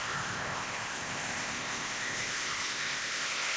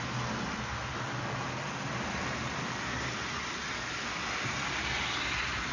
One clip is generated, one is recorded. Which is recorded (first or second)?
second